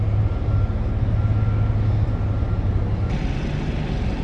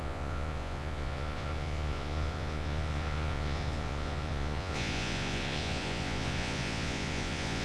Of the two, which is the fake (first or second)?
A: second